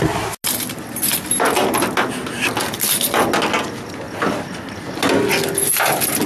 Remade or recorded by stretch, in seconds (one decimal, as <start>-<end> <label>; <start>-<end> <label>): 0.0-6.3 recorded